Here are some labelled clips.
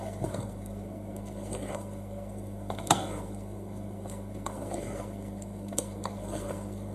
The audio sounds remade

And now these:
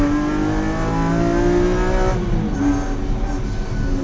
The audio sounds recorded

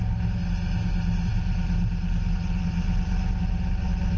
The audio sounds recorded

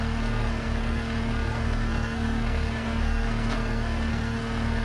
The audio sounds remade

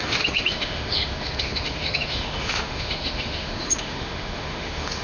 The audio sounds remade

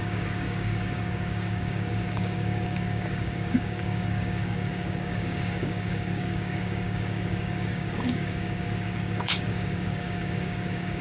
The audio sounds remade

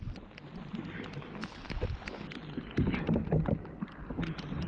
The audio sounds recorded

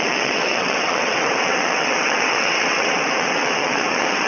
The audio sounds remade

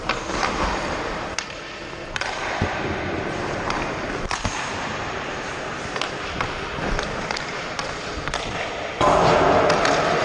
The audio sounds remade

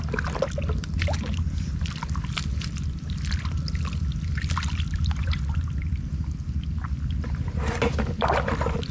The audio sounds recorded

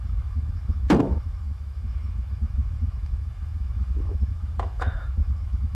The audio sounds remade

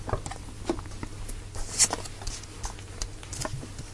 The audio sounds recorded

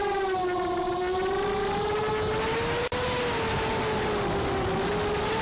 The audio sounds recorded